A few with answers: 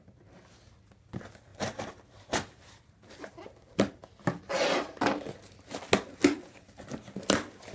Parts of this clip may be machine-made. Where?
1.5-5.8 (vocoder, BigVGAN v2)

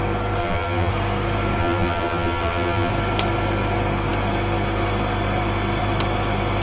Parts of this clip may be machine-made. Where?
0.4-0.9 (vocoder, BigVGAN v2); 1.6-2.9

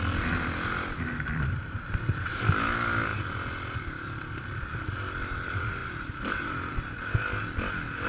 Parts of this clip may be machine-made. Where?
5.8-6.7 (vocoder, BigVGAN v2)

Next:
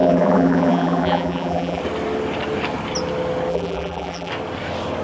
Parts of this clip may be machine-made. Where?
0.0-1.8 (vocoder, BigVGAN v2); 3.5-4.3